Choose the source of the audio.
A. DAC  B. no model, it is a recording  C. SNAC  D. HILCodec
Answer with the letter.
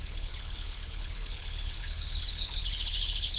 D